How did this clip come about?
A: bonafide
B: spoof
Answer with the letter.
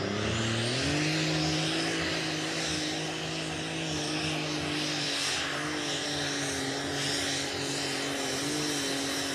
A